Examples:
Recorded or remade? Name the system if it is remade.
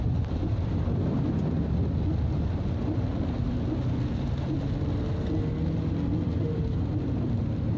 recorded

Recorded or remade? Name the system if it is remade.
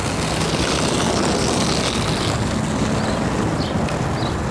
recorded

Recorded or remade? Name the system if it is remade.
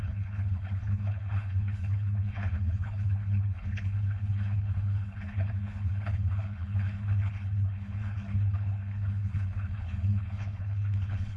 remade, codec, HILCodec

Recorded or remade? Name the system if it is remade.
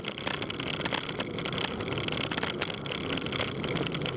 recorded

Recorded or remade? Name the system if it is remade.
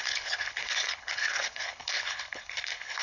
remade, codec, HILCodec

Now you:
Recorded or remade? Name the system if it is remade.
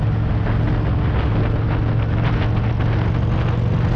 recorded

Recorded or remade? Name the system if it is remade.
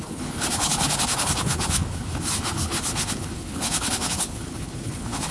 remade, codec, HILCodec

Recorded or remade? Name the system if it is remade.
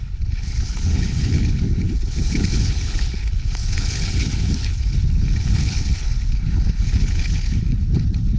remade, codec, HILCodec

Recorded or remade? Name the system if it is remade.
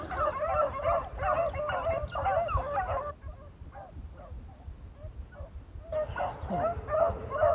recorded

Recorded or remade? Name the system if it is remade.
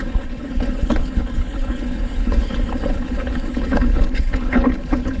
remade, codec, HILCodec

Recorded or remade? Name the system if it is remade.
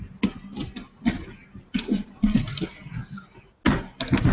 recorded